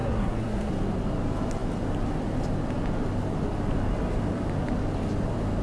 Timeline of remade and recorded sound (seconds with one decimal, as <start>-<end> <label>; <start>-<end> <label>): 0.0-0.7 remade; 0.7-5.6 recorded